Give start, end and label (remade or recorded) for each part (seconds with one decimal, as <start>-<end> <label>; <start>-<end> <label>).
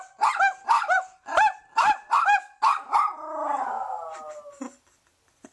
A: 0.0-5.5 recorded